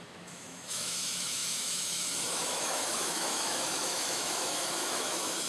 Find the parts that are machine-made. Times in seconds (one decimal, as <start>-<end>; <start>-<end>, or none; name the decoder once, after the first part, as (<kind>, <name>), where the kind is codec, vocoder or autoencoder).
0.0-5.5 (autoencoder, DAC-VAE)